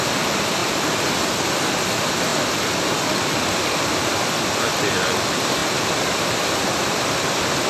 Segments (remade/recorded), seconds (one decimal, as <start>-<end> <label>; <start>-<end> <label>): 0.0-7.7 recorded